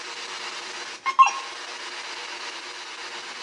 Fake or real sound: real